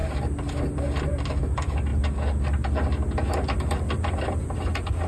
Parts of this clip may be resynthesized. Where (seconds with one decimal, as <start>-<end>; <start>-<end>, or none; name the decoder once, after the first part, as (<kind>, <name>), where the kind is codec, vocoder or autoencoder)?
none